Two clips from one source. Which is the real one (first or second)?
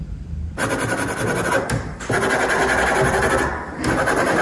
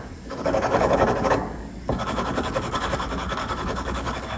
first